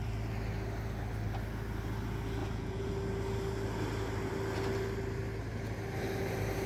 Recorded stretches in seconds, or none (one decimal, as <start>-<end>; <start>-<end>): 0.0-2.4; 2.9-6.7